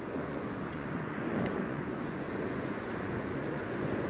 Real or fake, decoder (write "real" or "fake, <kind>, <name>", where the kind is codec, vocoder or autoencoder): fake, vocoder, Vocos